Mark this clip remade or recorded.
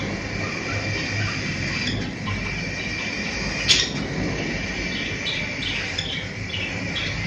recorded